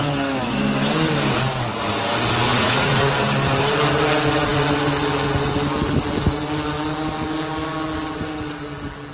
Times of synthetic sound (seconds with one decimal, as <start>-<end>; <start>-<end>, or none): 2.5-3.1